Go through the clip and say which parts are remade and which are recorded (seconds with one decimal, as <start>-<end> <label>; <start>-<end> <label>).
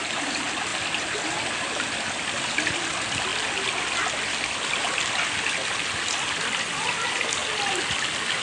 0.0-8.4 recorded